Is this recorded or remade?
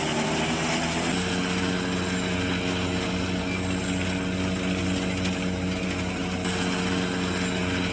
recorded